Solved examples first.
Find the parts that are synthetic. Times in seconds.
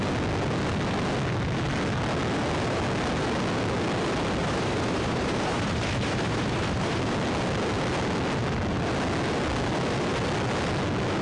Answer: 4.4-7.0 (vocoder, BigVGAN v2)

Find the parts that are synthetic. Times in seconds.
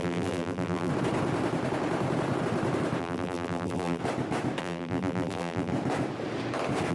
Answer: 0.0-0.9 (vocoder, BigVGAN v2); 3.0-4.0; 4.6-5.7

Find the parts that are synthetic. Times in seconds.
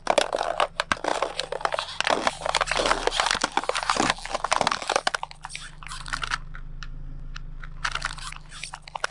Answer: 1.1-2.3 (vocoder, BigVGAN v2)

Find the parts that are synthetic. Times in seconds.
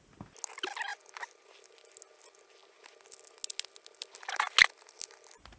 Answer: 0.9-1.7 (vocoder, BigVGAN v2)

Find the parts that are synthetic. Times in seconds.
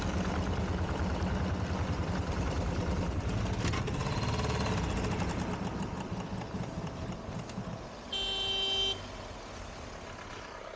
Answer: none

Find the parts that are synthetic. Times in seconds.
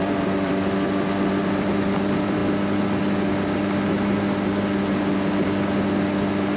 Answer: 0.0-2.4 (vocoder, BigVGAN v2)